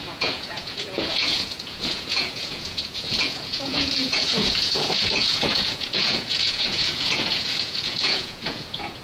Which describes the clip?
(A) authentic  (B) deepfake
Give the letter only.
B